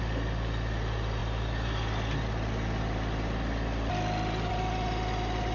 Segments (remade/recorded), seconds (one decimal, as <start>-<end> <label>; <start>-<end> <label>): 0.0-5.5 recorded